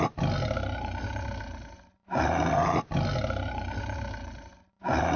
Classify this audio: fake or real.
real